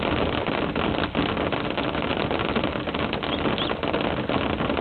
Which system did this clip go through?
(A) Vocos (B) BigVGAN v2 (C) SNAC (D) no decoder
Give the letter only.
D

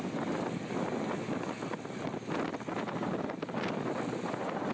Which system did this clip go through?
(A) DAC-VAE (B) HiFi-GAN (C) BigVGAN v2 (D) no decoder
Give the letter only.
D